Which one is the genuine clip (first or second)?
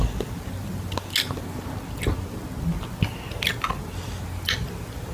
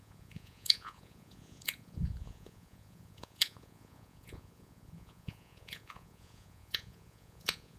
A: first